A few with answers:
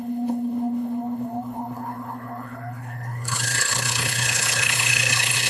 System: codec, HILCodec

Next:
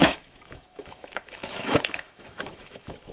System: autoencoder, DAC-VAE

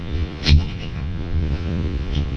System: vocoder, Vocos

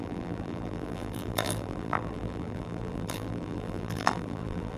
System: vocoder, BigVGAN v2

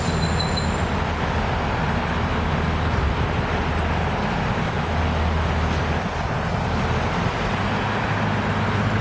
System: none